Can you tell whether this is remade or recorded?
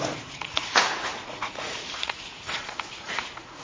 remade